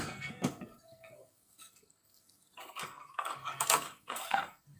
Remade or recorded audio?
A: remade